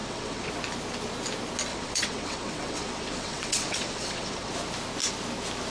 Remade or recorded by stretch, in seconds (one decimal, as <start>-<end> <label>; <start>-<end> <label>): 0.0-0.5 remade; 0.5-1.7 recorded; 1.7-4.5 remade; 4.5-5.7 recorded